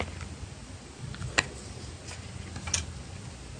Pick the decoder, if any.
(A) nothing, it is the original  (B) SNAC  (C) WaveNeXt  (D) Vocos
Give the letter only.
A